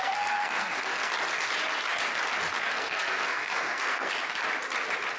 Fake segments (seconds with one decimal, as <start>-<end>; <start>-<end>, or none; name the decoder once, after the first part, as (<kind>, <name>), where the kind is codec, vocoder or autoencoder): 0.0-1.1 (codec, SNAC); 2.6-4.1